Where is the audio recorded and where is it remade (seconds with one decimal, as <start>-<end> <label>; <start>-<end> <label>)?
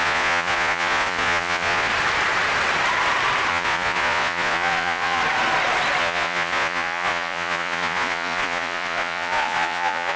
0.0-1.9 remade; 1.9-3.5 recorded; 3.5-5.2 remade; 5.2-6.0 recorded; 6.0-10.2 remade